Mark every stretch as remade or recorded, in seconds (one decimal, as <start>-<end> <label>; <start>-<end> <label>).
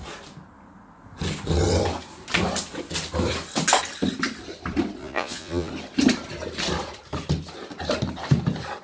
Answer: 0.0-5.0 recorded; 5.0-5.7 remade; 5.7-8.8 recorded